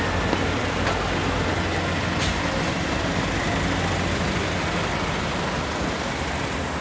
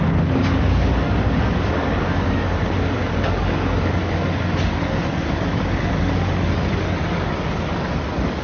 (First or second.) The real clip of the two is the first